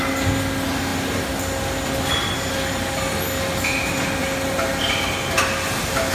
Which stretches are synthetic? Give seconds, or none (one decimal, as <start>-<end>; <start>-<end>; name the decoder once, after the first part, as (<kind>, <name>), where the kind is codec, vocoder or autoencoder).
none